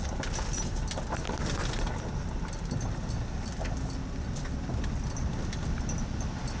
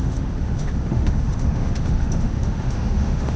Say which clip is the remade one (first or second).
second